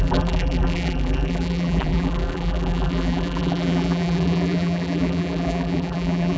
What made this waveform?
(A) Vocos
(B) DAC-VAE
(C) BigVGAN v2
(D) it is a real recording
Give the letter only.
C